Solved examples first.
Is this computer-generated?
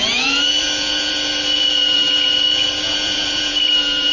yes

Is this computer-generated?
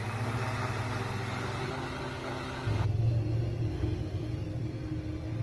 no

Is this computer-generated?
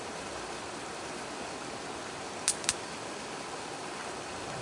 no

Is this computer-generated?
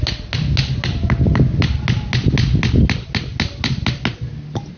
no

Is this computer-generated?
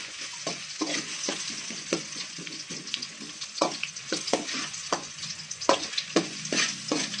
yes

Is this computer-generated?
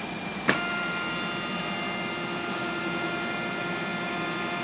no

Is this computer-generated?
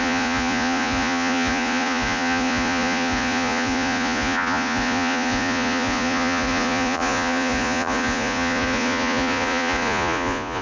yes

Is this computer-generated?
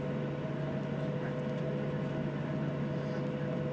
no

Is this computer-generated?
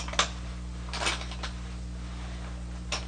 no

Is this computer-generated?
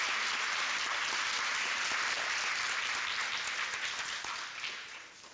no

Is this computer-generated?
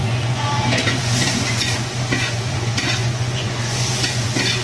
yes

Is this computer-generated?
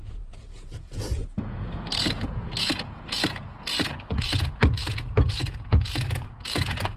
yes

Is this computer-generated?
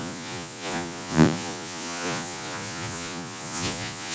yes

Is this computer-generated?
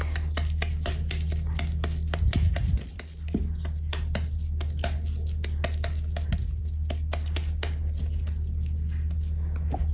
no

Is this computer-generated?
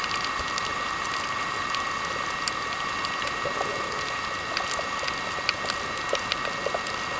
no